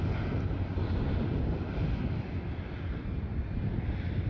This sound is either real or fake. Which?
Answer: real